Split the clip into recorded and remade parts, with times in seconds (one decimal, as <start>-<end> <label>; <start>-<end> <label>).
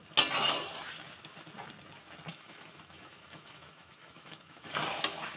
0.0-2.3 recorded; 2.3-4.7 remade; 4.7-5.4 recorded